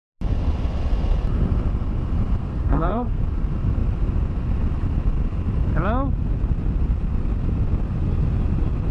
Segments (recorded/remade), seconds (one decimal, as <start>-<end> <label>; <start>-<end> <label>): 0.0-2.4 recorded; 2.4-3.2 remade; 3.2-8.9 recorded